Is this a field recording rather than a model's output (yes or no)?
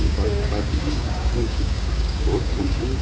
no